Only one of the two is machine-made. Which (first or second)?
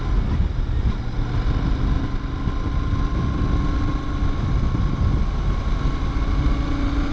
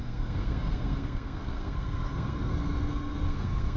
second